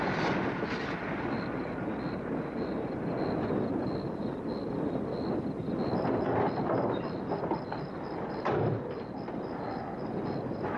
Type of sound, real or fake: real